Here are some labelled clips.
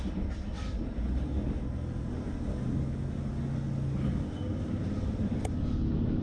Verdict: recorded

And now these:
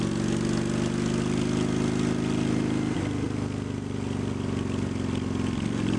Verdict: recorded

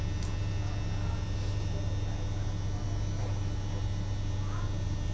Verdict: recorded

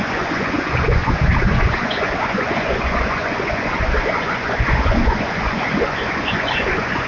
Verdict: remade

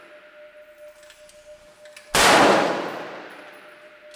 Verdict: recorded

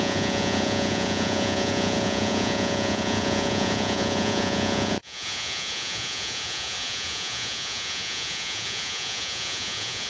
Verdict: remade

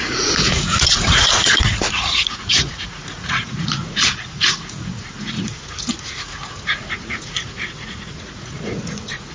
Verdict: remade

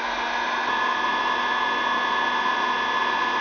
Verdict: recorded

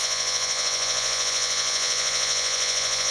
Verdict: remade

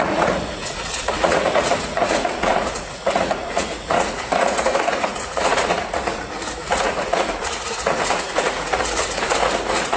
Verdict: remade